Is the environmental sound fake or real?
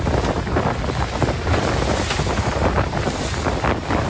real